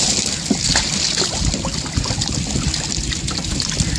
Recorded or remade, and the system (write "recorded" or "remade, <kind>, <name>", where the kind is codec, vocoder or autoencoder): recorded